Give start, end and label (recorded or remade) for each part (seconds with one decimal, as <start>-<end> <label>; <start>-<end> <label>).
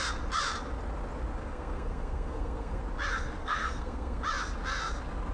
0.0-1.4 recorded; 1.4-2.8 remade; 2.8-3.4 recorded; 3.4-4.2 remade; 4.2-5.3 recorded